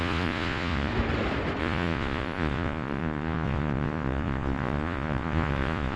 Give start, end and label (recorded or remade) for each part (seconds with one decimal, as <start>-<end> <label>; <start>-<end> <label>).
0.0-0.9 remade; 0.9-1.6 recorded; 1.6-6.0 remade